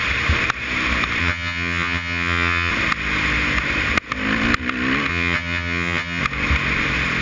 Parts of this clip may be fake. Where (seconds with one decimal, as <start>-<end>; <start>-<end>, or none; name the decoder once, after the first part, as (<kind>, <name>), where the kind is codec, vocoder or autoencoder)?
1.2-2.7 (vocoder, HiFi-GAN); 5.1-6.2